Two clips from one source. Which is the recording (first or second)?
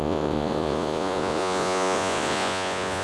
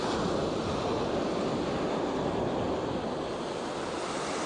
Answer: second